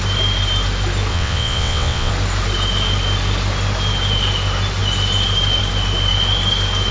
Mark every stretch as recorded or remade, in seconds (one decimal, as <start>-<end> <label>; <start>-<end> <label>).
0.0-1.1 recorded; 1.1-2.1 remade; 2.1-6.9 recorded